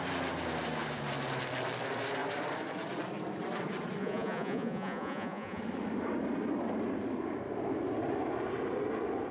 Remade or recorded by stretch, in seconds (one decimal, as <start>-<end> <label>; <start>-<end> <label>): 0.0-4.0 recorded; 4.0-5.6 remade; 5.6-9.3 recorded